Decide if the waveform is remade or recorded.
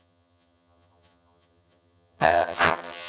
remade